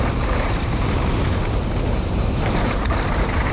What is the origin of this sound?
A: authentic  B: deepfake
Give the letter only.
B